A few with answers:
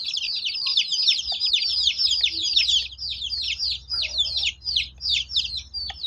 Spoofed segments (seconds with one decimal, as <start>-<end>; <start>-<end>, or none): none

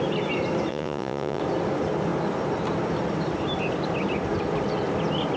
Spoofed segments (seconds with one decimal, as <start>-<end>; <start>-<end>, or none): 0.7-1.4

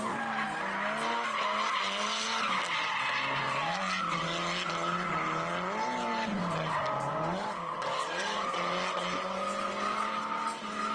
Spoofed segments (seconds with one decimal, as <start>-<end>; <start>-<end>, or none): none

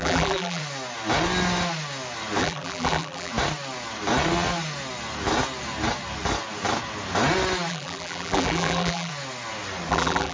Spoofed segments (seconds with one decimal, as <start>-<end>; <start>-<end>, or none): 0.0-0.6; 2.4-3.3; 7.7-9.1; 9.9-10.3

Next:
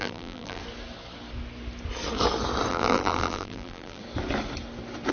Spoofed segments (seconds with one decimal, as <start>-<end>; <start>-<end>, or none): 0.0-0.6; 2.7-4.0

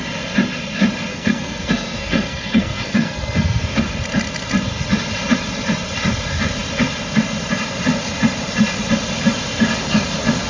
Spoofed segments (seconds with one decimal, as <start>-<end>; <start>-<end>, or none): 1.1-3.8